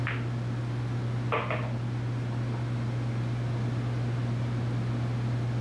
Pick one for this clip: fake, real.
real